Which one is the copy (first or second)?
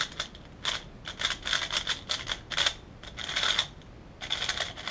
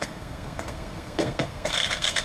second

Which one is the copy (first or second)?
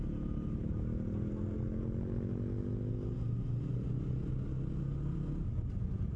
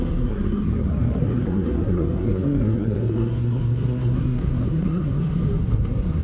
second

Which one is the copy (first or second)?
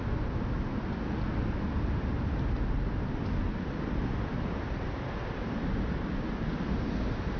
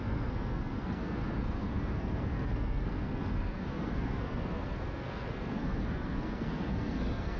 second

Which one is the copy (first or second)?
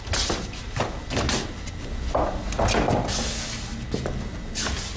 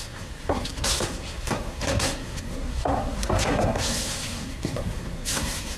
second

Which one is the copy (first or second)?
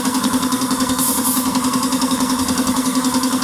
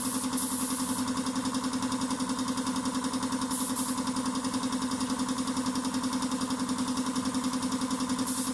first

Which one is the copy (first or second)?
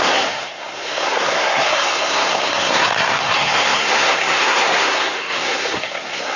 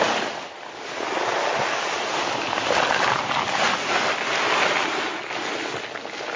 first